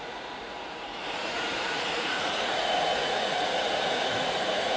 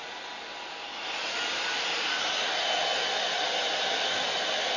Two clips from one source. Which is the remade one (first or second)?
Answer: first